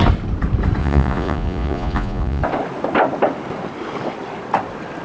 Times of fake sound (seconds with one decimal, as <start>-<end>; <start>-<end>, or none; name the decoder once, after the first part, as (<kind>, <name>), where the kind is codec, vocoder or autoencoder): 0.8-2.4 (vocoder, Vocos)